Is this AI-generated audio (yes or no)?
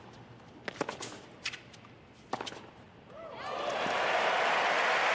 no